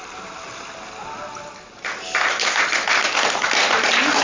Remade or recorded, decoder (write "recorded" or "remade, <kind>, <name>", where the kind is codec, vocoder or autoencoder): recorded